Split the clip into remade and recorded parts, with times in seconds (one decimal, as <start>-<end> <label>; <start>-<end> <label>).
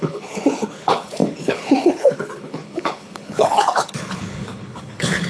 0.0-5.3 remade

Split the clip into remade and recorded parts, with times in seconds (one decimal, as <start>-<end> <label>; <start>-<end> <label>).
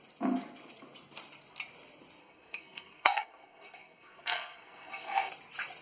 0.0-2.2 recorded; 2.2-5.3 remade; 5.3-5.8 recorded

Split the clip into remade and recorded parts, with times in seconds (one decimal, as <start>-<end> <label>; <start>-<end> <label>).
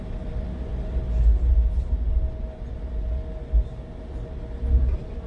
0.0-5.3 recorded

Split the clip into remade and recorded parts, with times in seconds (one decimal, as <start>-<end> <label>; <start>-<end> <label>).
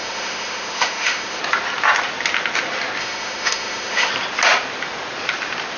0.0-1.4 remade; 1.4-3.0 recorded; 3.0-4.1 remade; 4.1-5.8 recorded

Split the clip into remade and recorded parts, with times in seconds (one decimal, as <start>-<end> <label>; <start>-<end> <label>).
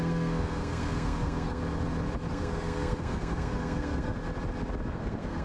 0.0-1.6 remade; 1.6-2.3 recorded; 2.3-4.2 remade; 4.2-4.9 recorded; 4.9-5.4 remade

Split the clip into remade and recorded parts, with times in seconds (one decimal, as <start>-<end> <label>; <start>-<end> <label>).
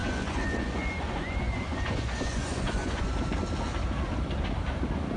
0.0-3.1 remade; 3.1-5.2 recorded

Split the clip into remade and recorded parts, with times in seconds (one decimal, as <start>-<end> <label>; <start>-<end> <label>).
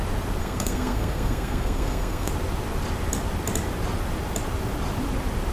0.0-0.4 recorded; 0.4-2.3 remade; 2.3-5.5 recorded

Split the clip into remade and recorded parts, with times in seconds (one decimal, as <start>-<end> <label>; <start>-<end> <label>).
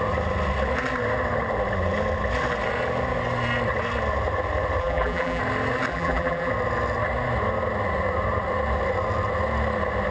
0.0-4.8 recorded; 4.8-5.4 remade; 5.4-5.9 recorded; 5.9-6.5 remade; 6.5-10.1 recorded